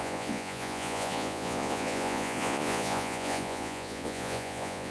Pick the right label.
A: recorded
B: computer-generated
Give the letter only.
B